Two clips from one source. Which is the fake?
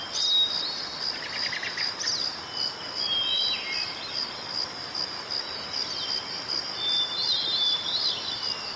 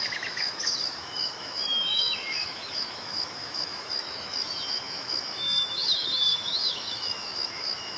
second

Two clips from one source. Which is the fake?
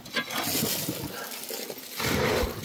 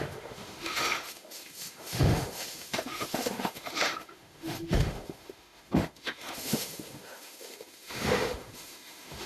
second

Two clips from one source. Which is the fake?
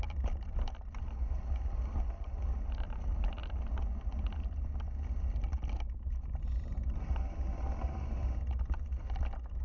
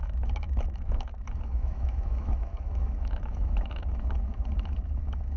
second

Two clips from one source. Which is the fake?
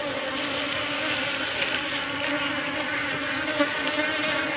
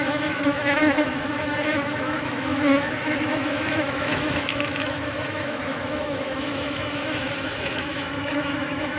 second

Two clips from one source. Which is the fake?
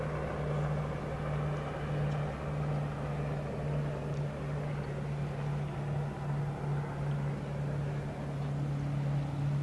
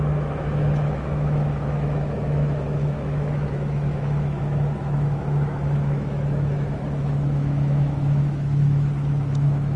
second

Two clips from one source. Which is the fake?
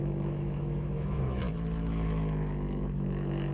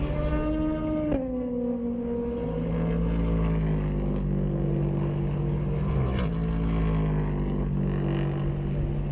first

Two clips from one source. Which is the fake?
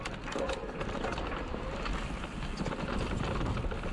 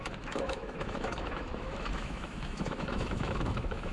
second